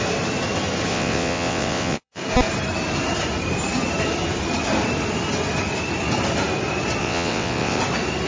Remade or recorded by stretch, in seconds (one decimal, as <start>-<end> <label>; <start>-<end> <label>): 0.0-0.9 recorded; 0.9-2.2 remade; 2.2-7.0 recorded; 7.0-7.8 remade; 7.8-8.3 recorded